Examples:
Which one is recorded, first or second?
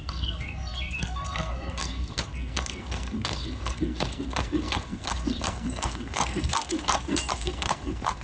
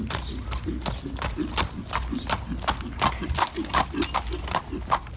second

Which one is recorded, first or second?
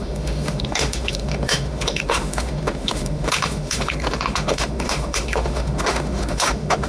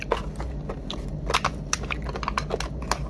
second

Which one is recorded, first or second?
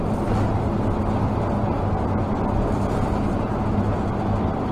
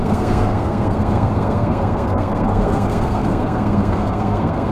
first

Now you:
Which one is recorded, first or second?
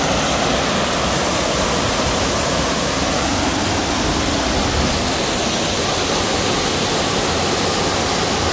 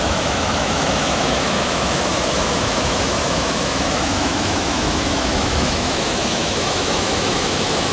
first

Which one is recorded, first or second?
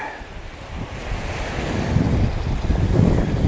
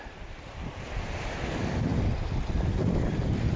first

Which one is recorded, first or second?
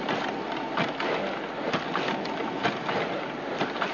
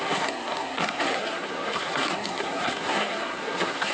first